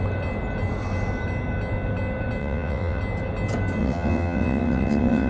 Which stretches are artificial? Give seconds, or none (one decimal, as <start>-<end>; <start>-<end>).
2.4-3.0; 3.8-5.3